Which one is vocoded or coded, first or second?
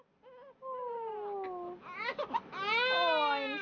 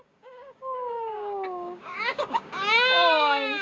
second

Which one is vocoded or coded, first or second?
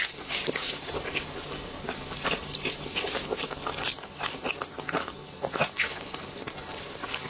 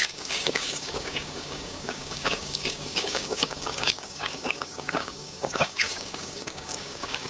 second